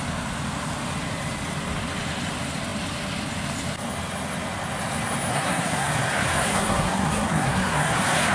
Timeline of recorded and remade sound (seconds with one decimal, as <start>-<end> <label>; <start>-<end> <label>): 0.0-5.3 recorded; 5.3-8.3 remade

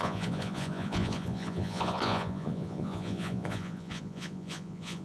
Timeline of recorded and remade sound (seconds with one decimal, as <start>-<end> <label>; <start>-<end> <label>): 0.0-5.0 remade

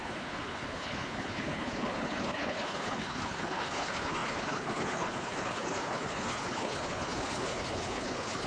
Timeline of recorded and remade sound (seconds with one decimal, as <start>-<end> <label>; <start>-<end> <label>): 0.0-8.5 remade